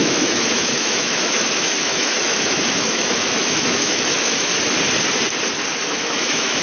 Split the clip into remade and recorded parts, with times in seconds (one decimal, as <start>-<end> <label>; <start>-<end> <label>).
0.0-4.5 remade; 4.5-5.8 recorded; 5.8-6.6 remade